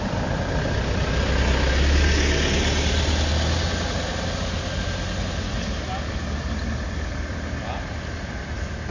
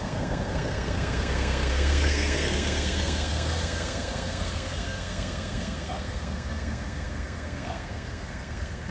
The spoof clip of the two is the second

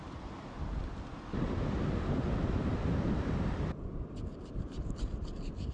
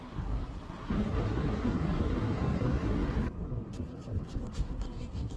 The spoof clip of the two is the second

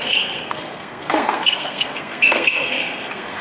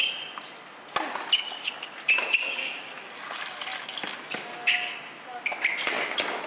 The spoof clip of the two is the first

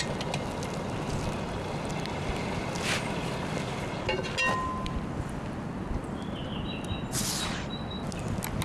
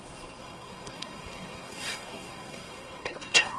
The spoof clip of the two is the second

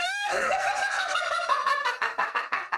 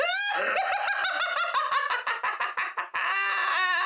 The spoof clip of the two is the first